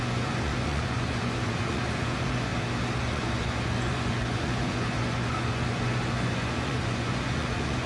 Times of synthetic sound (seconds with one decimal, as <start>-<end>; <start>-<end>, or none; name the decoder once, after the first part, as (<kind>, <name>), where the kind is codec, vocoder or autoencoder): 0.0-2.5 (vocoder, Vocos); 3.0-7.9